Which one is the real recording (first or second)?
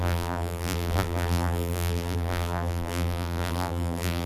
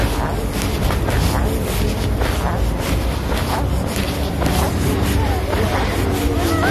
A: second